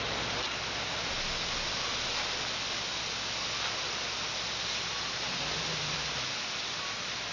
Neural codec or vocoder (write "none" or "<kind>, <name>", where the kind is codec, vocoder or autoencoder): none